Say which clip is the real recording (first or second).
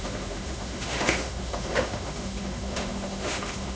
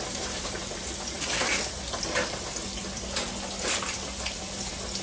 second